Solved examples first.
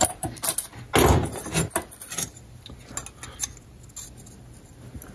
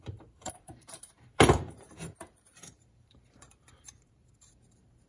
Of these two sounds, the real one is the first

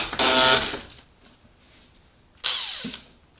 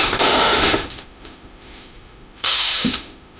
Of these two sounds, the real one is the first